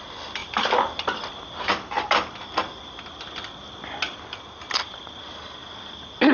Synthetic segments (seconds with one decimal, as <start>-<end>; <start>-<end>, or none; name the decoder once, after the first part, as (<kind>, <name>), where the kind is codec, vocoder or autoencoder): none